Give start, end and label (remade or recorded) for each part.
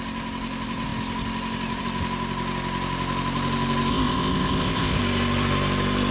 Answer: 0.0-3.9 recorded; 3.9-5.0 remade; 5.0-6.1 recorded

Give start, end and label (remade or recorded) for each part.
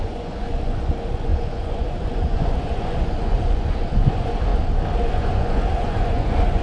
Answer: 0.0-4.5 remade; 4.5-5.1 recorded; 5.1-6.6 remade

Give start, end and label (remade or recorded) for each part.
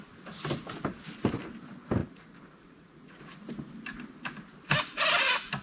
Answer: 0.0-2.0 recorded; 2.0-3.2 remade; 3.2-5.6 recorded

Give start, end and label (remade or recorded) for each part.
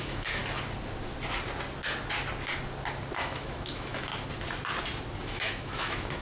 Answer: 0.0-0.4 remade; 0.4-3.2 recorded; 3.2-4.1 remade; 4.1-5.2 recorded; 5.2-6.2 remade